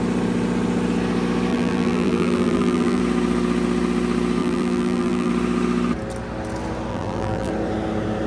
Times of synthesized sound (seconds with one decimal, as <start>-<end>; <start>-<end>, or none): 1.5-3.0; 4.4-5.3; 6.9-7.5